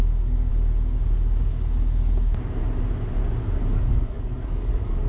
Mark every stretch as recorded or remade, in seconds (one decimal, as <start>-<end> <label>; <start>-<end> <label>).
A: 0.0-0.5 remade; 0.5-3.6 recorded; 3.6-5.1 remade